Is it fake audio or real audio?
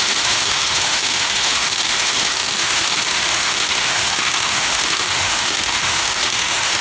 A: fake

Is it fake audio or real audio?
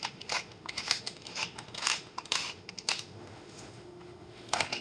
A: fake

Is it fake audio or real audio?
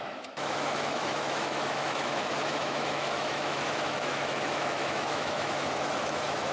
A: fake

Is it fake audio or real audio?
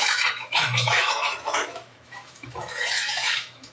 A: fake